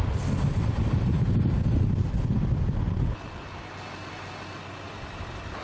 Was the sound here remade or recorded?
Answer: recorded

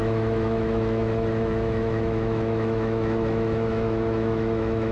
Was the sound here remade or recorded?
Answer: remade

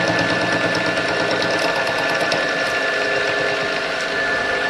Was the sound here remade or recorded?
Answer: recorded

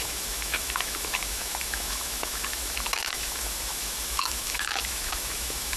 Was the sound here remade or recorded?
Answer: remade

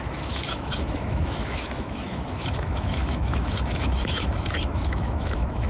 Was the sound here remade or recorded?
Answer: remade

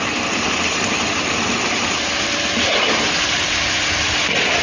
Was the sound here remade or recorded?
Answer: recorded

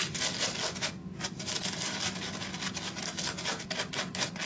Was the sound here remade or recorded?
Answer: recorded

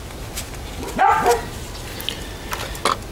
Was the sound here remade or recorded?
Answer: recorded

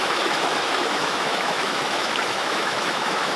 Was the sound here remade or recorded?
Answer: remade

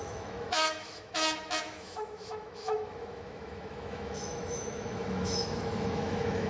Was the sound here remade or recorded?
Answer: remade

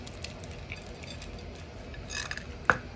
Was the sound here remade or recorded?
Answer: recorded